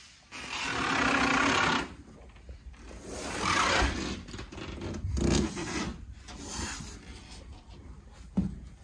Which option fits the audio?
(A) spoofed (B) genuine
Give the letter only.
B